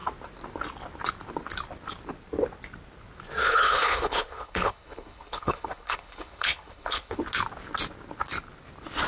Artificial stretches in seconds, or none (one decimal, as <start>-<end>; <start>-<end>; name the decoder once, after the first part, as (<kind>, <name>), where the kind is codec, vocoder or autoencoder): 3.4-7.2 (codec, HILCodec)